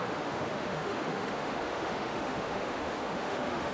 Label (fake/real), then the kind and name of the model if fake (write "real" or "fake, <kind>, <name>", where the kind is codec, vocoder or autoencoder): fake, autoencoder, DAC-VAE